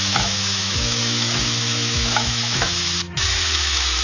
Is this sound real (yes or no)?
no